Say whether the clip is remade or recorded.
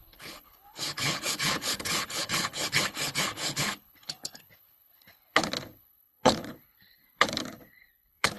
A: remade